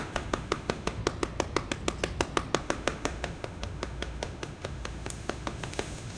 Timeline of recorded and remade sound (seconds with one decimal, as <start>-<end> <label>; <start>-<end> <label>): 0.0-1.0 remade; 1.0-2.6 recorded; 2.6-6.2 remade